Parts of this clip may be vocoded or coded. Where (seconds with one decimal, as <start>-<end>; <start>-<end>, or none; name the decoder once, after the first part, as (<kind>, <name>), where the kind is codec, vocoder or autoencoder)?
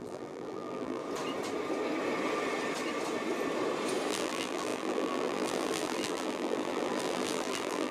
0.0-1.0 (vocoder, BigVGAN v2); 4.1-7.9